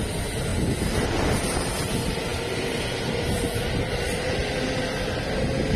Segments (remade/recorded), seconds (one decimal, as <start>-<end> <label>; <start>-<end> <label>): 0.0-5.8 recorded